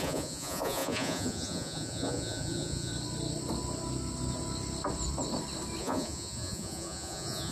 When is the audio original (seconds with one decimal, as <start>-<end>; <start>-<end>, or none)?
2.9-5.8